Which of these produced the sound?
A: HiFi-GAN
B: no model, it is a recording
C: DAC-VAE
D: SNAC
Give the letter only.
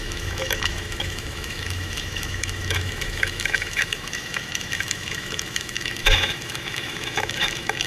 C